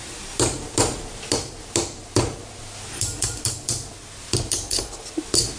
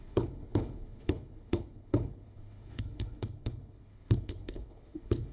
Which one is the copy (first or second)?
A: second